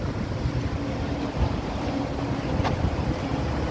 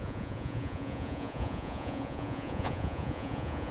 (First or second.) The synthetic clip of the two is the second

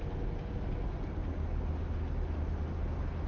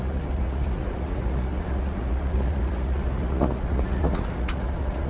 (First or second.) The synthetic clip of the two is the second